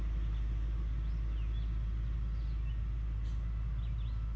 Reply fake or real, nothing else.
real